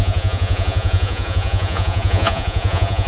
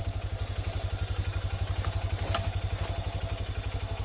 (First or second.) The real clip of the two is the second